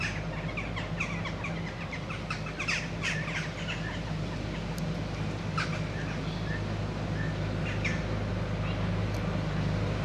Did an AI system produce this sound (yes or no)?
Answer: no